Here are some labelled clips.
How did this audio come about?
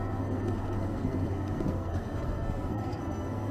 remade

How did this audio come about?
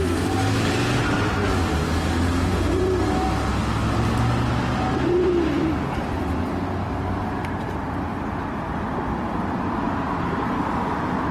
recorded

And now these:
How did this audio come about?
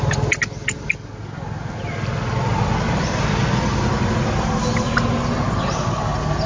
recorded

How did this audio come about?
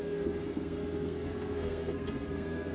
remade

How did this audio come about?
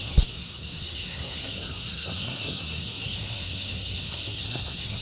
remade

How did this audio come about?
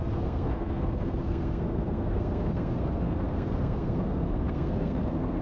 remade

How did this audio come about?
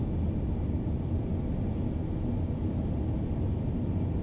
recorded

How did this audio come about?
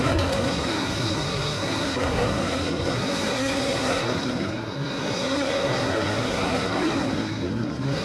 remade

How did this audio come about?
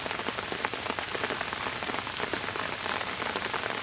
recorded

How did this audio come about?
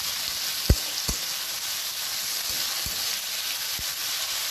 recorded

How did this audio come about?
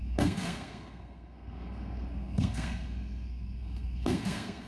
remade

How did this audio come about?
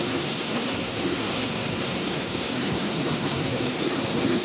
remade